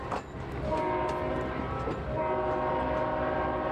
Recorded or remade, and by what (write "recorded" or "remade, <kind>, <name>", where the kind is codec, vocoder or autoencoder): recorded